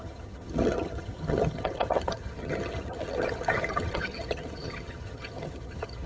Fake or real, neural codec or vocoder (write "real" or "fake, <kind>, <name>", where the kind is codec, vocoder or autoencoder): fake, vocoder, HiFi-GAN